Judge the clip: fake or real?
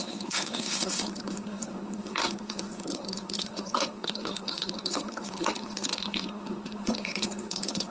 fake